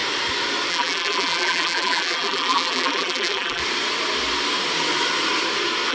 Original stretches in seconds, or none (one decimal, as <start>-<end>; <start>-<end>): 0.0-0.7; 3.6-5.9